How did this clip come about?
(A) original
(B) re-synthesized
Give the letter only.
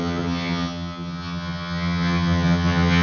B